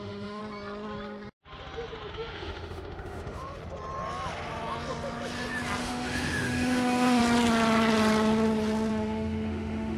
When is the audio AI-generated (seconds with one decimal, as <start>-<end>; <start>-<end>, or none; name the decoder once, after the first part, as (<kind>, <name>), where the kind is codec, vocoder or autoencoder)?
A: 0.0-0.4 (autoencoder, DAC-VAE); 2.1-3.6; 5.8-7.2; 8.9-10.0